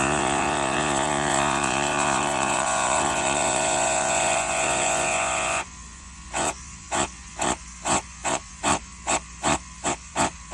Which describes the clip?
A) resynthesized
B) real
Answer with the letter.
A